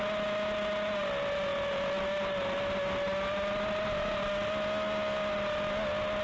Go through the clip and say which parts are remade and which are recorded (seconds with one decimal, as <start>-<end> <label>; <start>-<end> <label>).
0.0-6.2 recorded